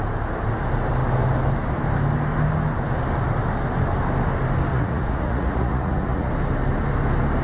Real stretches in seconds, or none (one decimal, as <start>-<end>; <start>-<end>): 0.0-4.7; 6.3-7.4

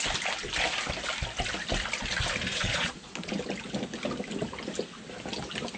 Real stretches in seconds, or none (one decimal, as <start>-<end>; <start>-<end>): 0.0-2.5; 3.3-5.8

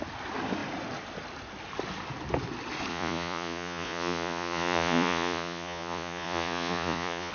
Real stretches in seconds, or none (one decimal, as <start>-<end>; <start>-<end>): 0.0-2.9

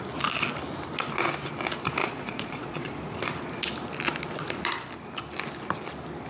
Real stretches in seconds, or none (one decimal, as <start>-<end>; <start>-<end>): 0.0-2.0; 2.9-6.3

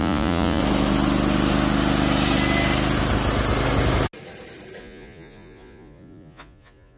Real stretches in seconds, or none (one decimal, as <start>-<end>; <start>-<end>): 0.6-4.8

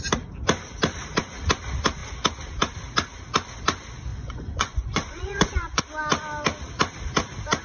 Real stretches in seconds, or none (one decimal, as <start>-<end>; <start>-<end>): 0.0-4.1; 5.8-7.6

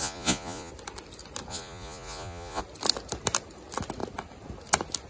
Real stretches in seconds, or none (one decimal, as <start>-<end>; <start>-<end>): 0.7-1.5; 2.6-5.1